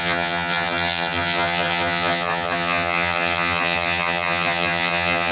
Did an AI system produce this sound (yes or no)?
yes